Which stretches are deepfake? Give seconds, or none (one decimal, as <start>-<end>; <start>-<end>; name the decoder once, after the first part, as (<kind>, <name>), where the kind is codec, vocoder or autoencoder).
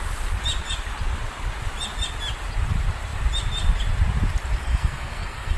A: 4.6-5.6 (codec, SNAC)